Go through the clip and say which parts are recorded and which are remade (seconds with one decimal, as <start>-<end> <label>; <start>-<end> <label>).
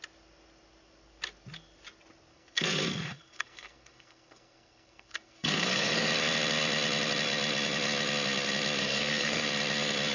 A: 0.0-2.3 recorded; 2.3-6.1 remade; 6.1-8.8 recorded; 8.8-9.4 remade; 9.4-10.1 recorded